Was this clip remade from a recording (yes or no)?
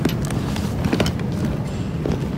no